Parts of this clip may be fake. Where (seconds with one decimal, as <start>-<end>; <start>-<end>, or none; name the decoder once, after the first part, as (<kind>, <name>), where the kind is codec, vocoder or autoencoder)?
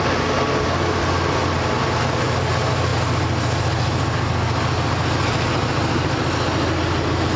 none